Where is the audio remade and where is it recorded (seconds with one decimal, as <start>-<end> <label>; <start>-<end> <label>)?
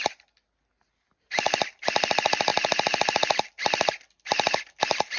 0.0-5.2 recorded